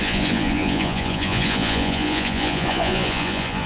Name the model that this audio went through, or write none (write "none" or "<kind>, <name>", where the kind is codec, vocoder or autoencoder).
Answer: vocoder, Vocos